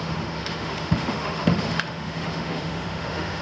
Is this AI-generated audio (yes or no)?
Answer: yes